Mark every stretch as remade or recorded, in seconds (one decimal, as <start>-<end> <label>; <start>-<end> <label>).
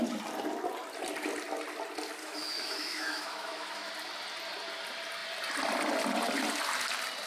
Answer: 0.0-2.2 recorded; 2.2-3.9 remade; 3.9-7.3 recorded